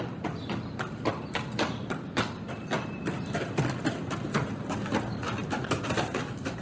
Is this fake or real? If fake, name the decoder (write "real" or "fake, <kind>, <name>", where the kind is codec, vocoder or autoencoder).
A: real